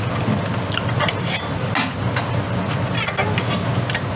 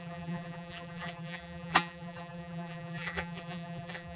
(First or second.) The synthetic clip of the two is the second